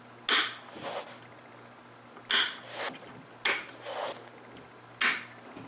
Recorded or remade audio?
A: recorded